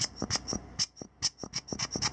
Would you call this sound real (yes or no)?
yes